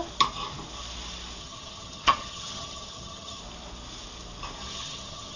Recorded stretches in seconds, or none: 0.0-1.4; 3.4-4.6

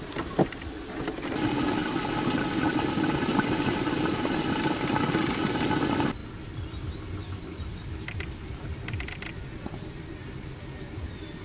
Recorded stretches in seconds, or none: 0.0-3.3; 5.0-6.2; 10.6-11.4